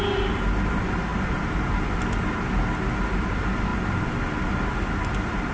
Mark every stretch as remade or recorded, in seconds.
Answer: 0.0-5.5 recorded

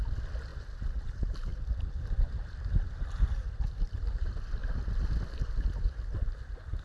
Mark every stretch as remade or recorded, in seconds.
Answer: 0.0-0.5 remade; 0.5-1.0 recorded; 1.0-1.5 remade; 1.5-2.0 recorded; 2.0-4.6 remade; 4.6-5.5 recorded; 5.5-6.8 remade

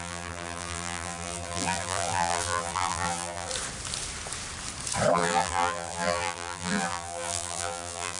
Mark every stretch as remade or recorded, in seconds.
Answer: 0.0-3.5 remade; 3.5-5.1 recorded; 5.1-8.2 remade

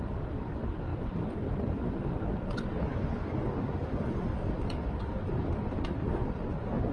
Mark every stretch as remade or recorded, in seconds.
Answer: 0.0-6.9 recorded

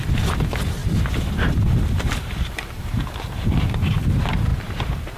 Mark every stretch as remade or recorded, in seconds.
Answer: 0.0-0.8 recorded; 0.8-3.9 remade; 3.9-4.5 recorded; 4.5-5.2 remade

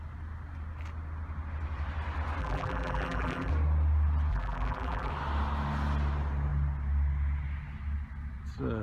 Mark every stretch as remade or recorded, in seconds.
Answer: 0.0-2.4 recorded; 2.4-3.5 remade; 3.5-4.3 recorded; 4.3-5.1 remade; 5.1-8.8 recorded

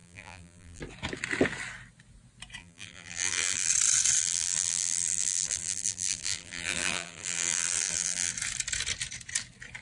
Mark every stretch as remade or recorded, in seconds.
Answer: 0.0-0.8 remade; 0.8-2.6 recorded; 2.6-3.7 remade; 3.7-4.2 recorded; 4.2-8.3 remade; 8.3-9.8 recorded